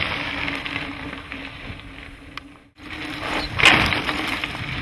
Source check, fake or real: real